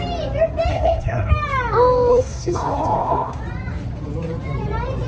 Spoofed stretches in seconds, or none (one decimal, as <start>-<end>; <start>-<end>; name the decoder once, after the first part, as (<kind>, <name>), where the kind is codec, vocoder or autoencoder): 0.7-1.3 (codec, SNAC); 2.1-3.4